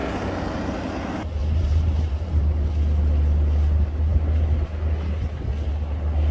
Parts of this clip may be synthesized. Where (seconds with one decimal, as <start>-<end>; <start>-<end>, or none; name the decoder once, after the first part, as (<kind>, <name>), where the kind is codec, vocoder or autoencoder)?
1.4-2.4 (vocoder, BigVGAN v2)